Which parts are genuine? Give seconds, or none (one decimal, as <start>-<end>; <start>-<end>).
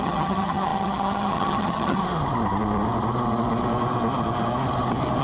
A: 2.0-5.2